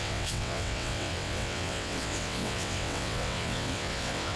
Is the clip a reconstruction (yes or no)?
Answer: yes